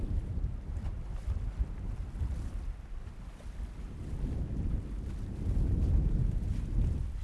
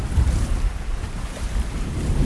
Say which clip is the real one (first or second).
first